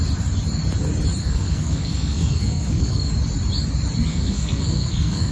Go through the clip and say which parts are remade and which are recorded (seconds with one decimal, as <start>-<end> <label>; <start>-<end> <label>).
0.0-1.2 recorded; 1.2-3.1 remade; 3.1-4.1 recorded; 4.1-5.3 remade